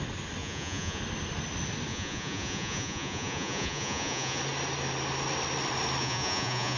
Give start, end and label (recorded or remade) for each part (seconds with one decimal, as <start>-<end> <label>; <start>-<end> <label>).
0.0-0.4 recorded; 0.4-1.0 remade; 1.0-1.9 recorded; 1.9-4.4 remade; 4.4-6.0 recorded; 6.0-6.8 remade